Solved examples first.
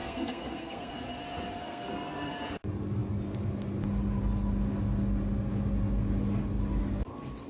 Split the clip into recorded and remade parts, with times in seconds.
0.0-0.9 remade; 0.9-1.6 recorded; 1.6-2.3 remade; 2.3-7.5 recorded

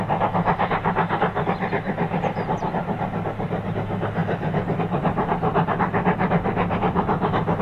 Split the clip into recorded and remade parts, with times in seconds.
0.0-7.6 recorded

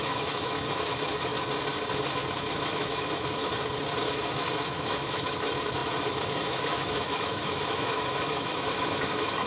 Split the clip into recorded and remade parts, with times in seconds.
0.0-1.3 remade; 1.3-2.5 recorded; 2.5-3.5 remade; 3.5-4.0 recorded; 4.0-9.5 remade

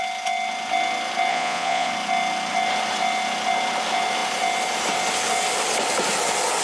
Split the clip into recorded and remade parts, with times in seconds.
0.0-1.3 recorded; 1.3-1.9 remade; 1.9-6.6 recorded